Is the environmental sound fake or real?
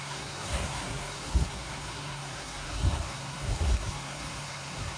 fake